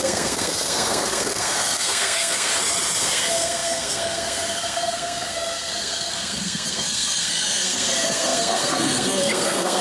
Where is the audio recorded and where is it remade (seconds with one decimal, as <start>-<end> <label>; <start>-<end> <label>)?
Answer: 0.0-2.5 remade; 2.5-3.0 recorded; 3.0-9.8 remade